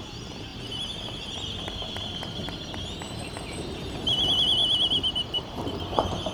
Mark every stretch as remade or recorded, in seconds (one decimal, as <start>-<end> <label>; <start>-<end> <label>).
0.0-4.6 remade; 4.6-5.1 recorded; 5.1-6.3 remade